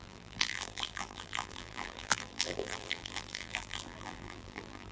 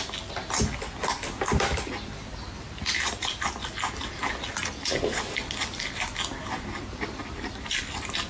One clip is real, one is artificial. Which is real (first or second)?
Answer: second